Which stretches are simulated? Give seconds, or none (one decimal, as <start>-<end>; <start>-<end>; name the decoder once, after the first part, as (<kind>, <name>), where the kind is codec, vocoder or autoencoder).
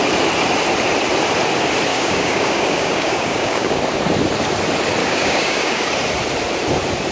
1.9-3.8 (codec, DAC); 5.0-5.9